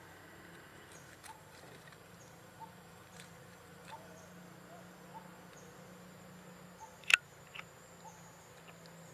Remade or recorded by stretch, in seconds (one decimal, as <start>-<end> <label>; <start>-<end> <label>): 0.0-0.7 recorded; 0.7-4.3 remade; 4.3-9.1 recorded